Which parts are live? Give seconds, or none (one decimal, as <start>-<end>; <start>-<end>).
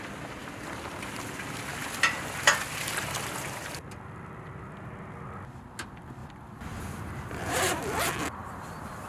0.0-1.8; 4.6-6.2; 8.0-8.4